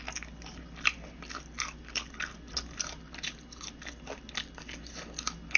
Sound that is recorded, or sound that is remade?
recorded